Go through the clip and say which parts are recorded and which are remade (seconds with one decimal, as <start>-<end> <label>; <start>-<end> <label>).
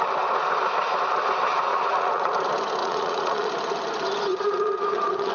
0.0-1.7 recorded; 1.7-2.3 remade; 2.3-2.8 recorded; 2.8-3.5 remade; 3.5-4.3 recorded; 4.3-5.3 remade